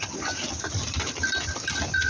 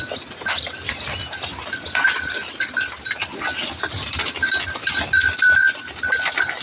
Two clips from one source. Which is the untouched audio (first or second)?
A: second